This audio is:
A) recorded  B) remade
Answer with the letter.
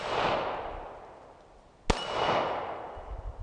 A